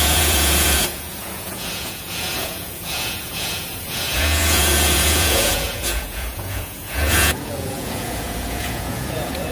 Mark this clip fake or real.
fake